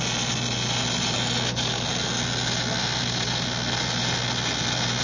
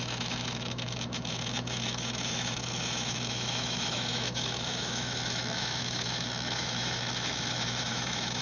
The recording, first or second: first